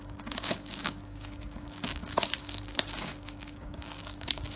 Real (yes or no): no